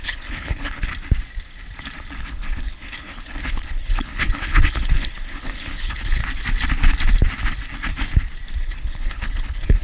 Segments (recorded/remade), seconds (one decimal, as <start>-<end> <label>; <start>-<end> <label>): 0.0-0.9 remade; 0.9-2.2 recorded; 2.2-6.2 remade; 6.2-8.6 recorded; 8.6-9.8 remade